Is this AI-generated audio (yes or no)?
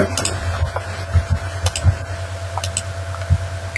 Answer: no